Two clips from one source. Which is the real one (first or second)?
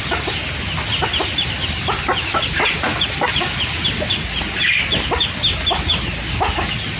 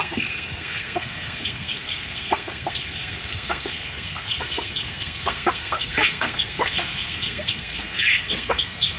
first